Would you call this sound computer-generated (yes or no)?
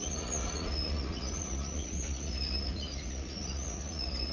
yes